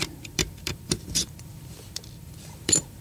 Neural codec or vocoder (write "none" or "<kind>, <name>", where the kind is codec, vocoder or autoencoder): vocoder, BigVGAN v2